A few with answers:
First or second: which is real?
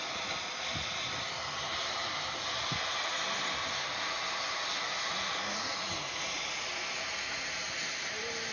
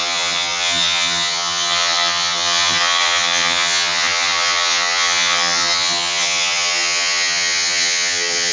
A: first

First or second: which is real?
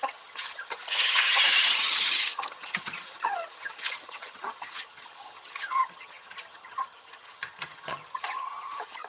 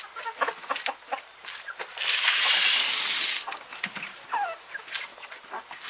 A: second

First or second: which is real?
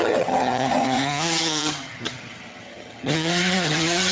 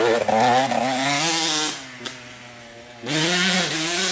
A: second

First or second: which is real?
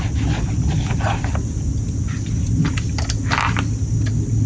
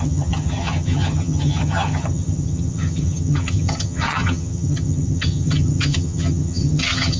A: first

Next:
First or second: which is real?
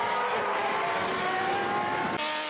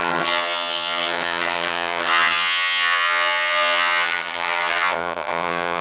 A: first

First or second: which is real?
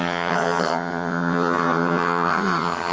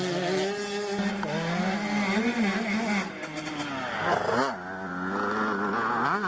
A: second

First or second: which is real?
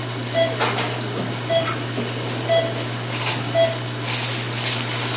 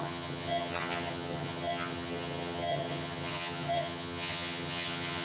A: first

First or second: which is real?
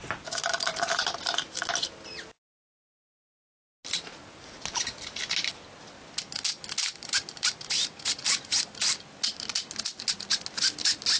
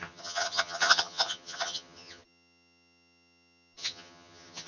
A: first